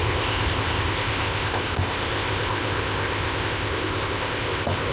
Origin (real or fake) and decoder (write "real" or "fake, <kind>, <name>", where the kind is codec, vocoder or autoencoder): fake, codec, ZipCodec